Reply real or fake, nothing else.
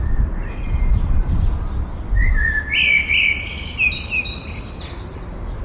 real